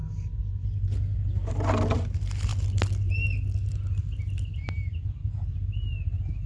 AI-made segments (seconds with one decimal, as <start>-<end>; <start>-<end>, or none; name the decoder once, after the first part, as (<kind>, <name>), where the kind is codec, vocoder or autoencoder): none